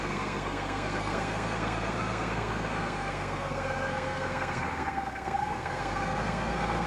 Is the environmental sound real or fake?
fake